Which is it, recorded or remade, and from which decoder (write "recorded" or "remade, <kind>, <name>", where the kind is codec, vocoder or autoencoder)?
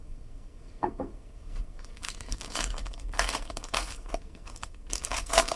remade, codec, SNAC